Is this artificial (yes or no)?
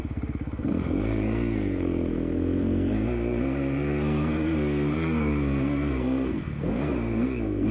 yes